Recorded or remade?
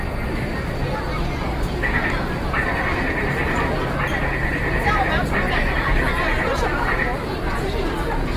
recorded